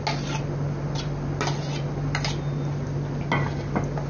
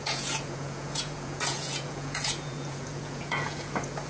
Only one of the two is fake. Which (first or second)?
second